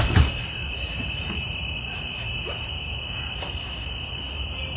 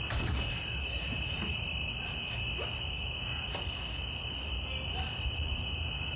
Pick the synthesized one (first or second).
first